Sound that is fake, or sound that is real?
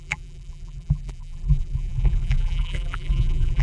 fake